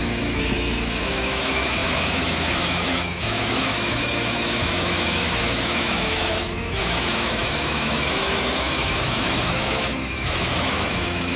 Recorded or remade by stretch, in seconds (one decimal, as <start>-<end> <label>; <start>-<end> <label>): 0.0-11.4 remade